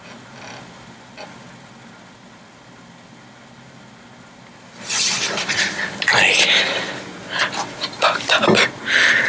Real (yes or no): yes